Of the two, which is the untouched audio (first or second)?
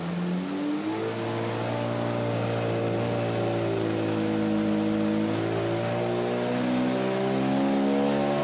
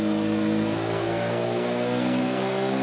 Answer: first